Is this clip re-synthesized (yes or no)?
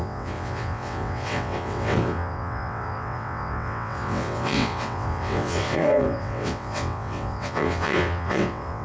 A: yes